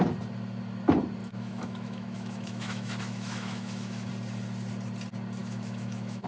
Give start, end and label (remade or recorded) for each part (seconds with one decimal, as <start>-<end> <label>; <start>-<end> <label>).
0.0-1.2 recorded; 1.2-4.1 remade; 4.1-5.4 recorded; 5.4-6.3 remade